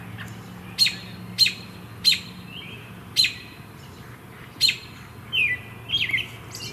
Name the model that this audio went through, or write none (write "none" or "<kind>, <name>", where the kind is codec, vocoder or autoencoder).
none